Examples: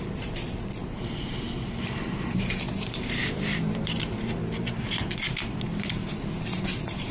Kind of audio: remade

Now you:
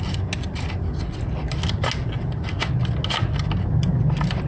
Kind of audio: recorded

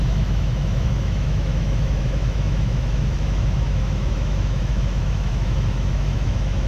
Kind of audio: remade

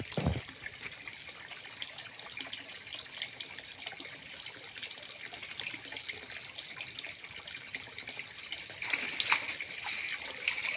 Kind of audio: recorded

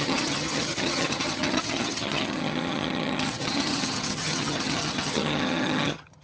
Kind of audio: remade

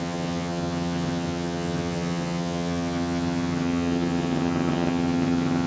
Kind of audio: remade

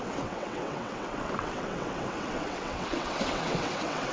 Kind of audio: remade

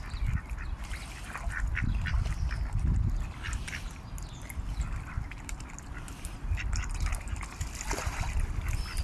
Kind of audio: recorded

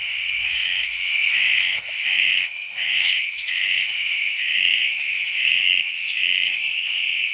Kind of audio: remade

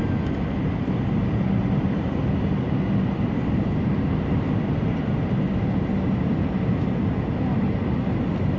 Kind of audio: recorded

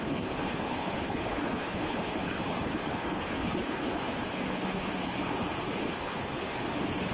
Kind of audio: remade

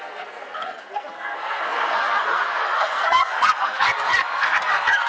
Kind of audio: remade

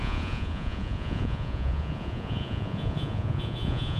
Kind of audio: remade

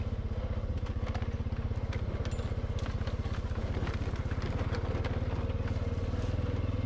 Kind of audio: recorded